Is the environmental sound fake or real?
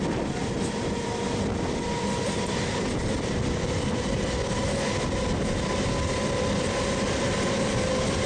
real